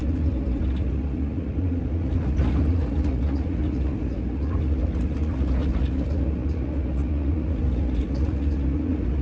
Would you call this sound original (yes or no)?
no